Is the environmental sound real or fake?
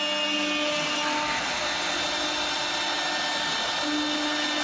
real